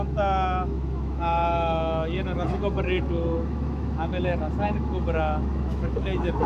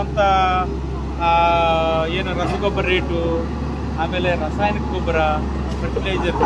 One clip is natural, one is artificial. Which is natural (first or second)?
second